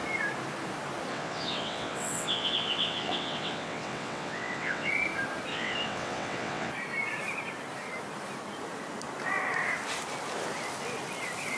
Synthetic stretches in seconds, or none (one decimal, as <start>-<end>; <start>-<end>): 1.1-4.9; 5.5-6.7

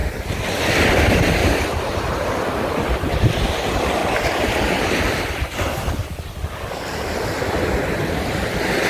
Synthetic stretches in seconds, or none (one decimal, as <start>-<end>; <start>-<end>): 0.9-1.4; 2.3-4.0; 5.2-8.9

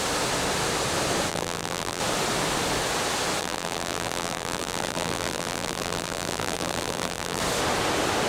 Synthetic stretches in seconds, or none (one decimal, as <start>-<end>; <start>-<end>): 1.3-2.0; 3.4-7.4

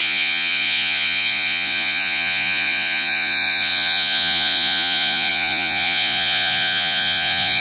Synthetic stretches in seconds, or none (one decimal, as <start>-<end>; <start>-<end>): 0.0-7.6

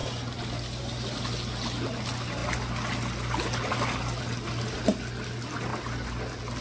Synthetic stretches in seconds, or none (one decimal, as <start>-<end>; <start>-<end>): none

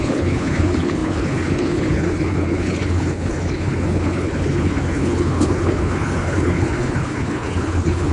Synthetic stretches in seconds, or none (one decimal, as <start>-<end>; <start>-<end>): 0.0-8.1

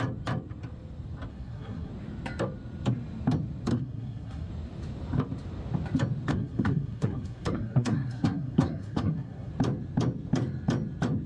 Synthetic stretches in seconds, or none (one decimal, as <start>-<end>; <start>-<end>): 1.3-1.9; 3.7-4.5; 6.3-9.5